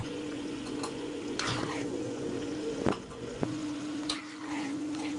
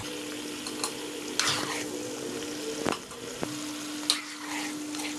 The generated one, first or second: first